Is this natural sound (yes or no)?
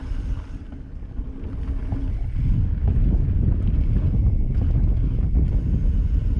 yes